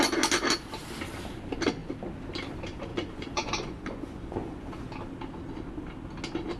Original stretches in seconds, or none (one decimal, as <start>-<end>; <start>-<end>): 0.0-2.9; 4.9-6.6